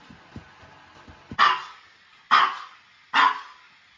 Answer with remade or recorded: recorded